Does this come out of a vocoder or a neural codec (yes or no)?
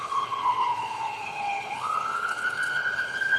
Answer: yes